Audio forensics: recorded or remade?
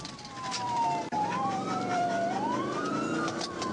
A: remade